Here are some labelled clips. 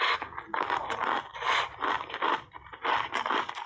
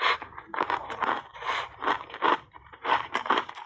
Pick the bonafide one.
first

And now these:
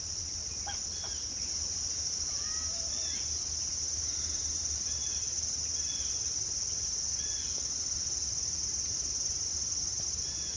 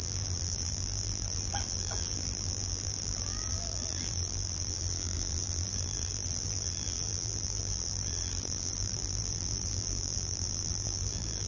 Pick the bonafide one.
first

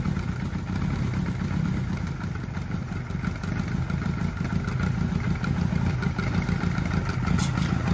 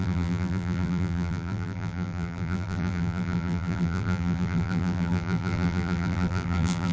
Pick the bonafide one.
first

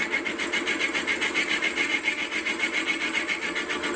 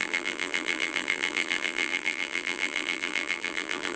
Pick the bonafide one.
first